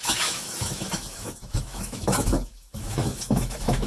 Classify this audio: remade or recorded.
remade